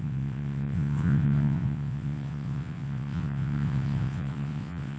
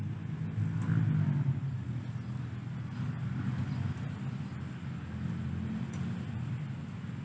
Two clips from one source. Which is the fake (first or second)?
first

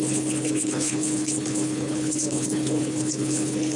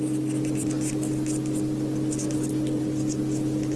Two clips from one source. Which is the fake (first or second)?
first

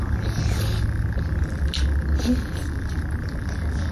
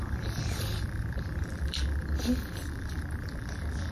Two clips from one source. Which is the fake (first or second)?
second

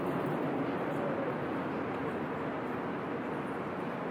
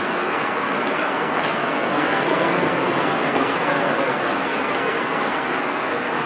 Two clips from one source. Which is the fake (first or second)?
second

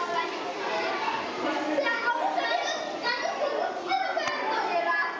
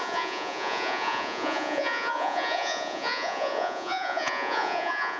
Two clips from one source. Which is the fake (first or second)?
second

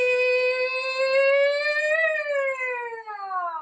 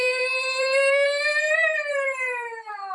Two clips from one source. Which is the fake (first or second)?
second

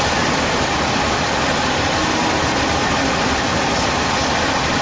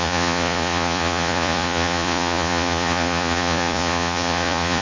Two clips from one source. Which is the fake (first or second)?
second